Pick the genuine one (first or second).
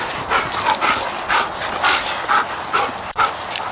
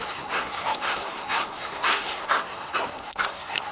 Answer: first